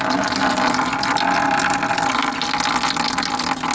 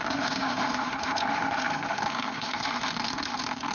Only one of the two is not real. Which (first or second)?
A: second